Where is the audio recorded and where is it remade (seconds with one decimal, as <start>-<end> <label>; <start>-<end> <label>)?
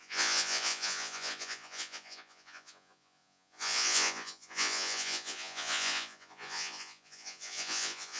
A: 0.0-8.2 remade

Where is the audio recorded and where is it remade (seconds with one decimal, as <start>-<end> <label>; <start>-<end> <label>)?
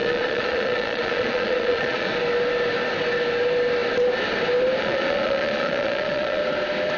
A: 0.0-2.1 remade; 2.1-4.8 recorded; 4.8-6.4 remade; 6.4-7.0 recorded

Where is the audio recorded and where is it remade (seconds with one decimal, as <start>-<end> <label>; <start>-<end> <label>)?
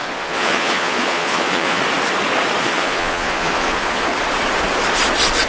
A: 0.0-1.8 remade; 1.8-2.6 recorded; 2.6-4.1 remade; 4.1-5.5 recorded